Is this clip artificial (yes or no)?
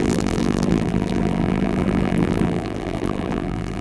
yes